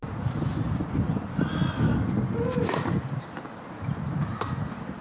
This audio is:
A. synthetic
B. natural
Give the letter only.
B